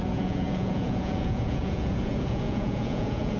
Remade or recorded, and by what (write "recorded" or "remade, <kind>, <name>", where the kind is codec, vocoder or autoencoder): remade, vocoder, Vocos